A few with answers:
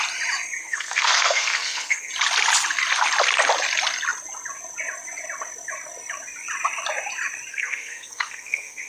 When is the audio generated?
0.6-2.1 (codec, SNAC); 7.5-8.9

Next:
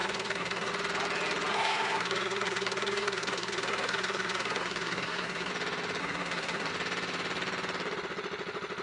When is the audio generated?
0.0-0.7 (codec, SNAC); 1.5-5.5; 6.0-6.7

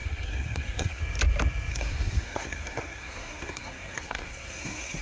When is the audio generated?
0.0-1.0 (codec, SNAC); 1.7-5.0

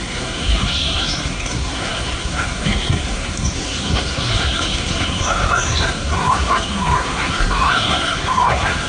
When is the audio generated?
0.0-8.9 (codec, SNAC)

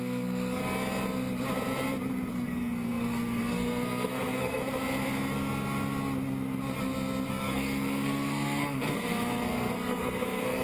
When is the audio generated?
0.0-0.6 (codec, SNAC); 2.3-4.6; 7.3-10.6